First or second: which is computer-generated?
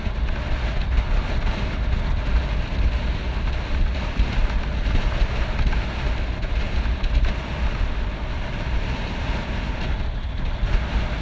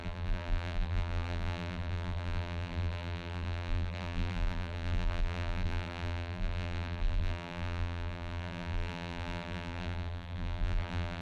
second